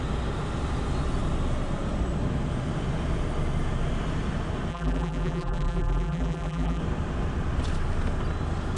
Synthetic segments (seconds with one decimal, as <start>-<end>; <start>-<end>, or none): 4.7-6.8